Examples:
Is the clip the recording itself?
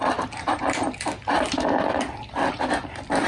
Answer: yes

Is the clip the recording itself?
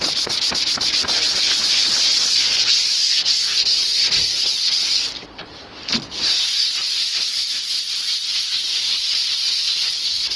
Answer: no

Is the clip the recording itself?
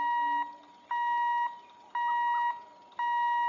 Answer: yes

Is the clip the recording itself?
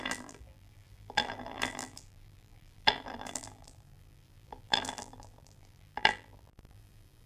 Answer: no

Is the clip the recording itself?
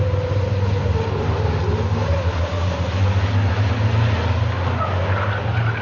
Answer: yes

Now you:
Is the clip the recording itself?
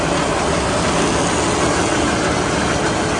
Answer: yes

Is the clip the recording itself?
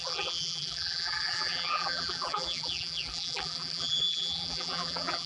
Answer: no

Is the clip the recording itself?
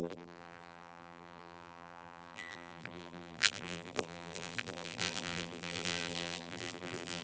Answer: no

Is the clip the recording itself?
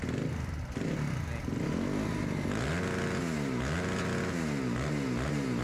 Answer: yes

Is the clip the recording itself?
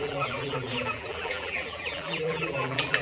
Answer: no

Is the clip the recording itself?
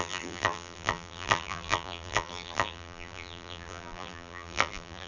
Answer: no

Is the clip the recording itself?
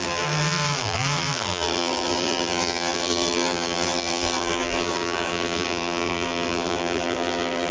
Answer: no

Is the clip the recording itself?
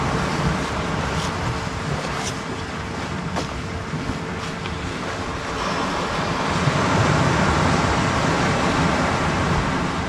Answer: yes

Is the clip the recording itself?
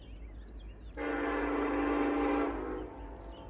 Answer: yes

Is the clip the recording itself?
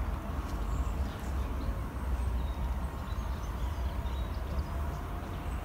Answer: yes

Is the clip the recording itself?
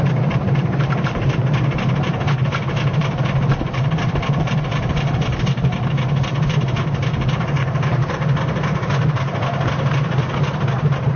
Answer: no